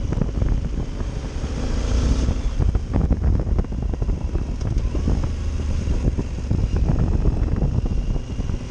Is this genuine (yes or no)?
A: yes